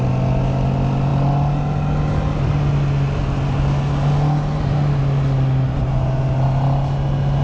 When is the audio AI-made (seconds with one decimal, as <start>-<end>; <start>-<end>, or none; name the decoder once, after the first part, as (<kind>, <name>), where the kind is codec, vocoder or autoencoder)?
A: none